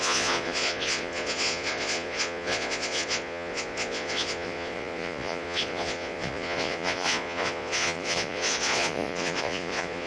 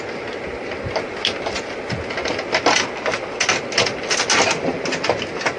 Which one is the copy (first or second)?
first